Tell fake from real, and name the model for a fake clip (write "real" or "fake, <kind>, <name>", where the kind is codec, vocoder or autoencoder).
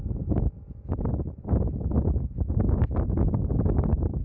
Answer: real